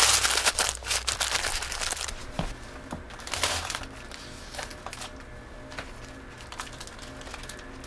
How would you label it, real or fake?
real